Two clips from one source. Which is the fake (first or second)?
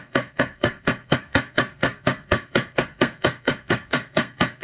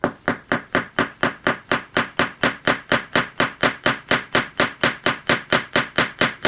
first